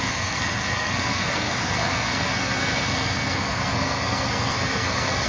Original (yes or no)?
no